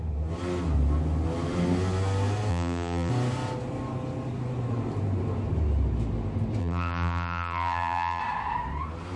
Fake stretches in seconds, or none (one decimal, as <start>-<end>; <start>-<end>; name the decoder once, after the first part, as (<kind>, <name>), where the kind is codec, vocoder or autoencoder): 2.5-3.1 (vocoder, BigVGAN v2); 6.6-8.2

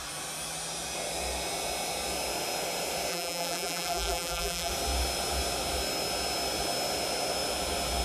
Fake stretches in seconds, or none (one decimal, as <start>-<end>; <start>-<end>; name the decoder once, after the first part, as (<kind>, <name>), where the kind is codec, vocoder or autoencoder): 3.1-4.7 (vocoder, BigVGAN v2)

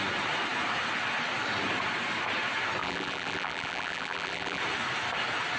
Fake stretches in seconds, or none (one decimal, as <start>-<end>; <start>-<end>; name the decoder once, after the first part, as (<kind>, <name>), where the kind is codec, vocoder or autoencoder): 2.8-4.6 (vocoder, BigVGAN v2)

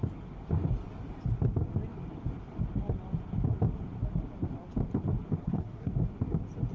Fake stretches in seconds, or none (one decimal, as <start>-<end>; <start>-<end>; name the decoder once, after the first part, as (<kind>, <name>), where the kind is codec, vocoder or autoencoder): 5.4-5.9 (codec, SNAC)

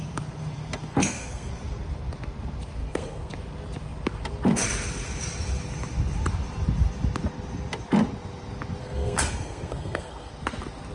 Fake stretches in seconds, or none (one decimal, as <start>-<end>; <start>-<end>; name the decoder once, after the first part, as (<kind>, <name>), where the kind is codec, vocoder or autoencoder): 0.9-1.5 (codec, SNAC); 2.8-3.3; 8.8-10.3

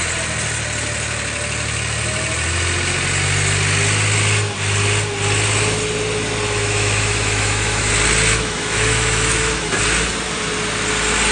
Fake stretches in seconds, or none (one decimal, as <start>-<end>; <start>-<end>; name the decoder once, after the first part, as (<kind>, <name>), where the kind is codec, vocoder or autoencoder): 6.6-7.9 (autoencoder, DAC-VAE); 8.3-9.8